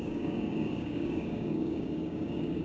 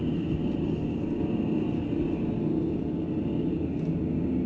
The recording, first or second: second